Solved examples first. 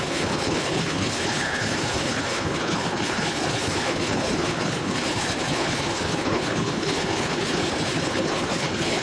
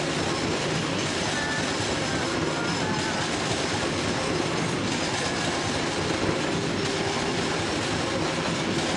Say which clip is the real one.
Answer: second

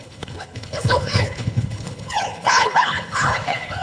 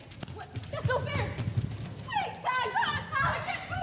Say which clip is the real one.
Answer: second